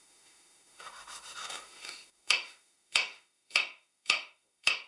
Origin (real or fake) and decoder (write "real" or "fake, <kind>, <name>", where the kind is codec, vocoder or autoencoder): fake, autoencoder, DAC-VAE